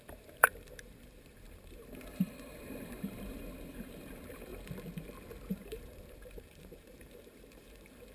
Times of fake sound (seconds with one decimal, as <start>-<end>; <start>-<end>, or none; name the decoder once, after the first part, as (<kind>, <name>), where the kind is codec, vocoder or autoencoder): 0.0-4.5 (vocoder, BigVGAN v2); 5.5-8.1